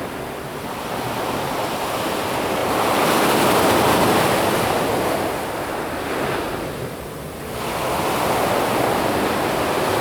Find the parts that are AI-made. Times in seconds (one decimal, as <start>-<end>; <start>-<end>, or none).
none